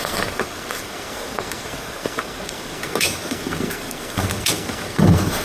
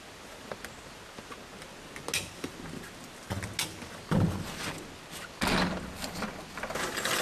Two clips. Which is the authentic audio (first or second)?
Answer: second